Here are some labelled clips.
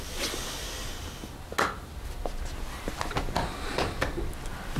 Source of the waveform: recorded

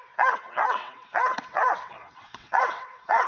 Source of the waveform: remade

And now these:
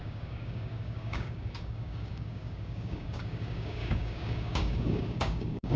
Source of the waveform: remade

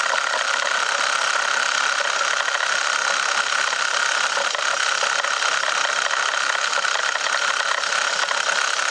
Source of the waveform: recorded